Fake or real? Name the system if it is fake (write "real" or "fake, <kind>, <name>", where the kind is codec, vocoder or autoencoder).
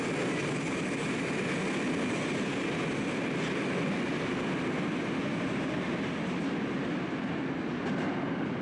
real